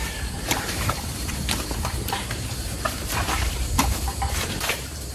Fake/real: fake